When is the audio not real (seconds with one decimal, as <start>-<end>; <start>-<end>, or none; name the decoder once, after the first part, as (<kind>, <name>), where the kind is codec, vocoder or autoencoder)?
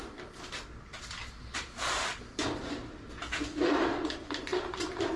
1.2-2.7 (vocoder, BigVGAN v2); 4.5-5.2